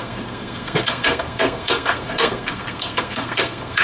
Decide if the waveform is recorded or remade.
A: remade